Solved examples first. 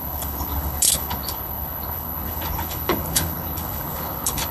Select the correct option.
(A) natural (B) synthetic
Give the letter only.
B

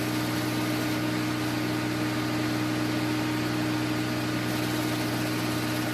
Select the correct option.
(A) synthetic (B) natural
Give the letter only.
B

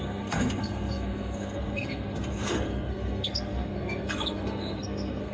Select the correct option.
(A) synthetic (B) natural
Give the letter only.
A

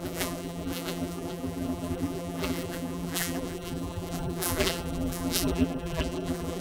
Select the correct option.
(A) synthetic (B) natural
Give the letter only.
A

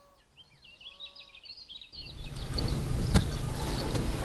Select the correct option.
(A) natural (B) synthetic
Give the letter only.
A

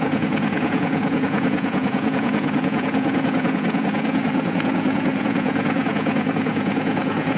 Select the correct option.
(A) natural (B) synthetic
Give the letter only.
B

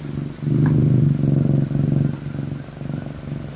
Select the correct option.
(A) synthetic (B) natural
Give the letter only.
B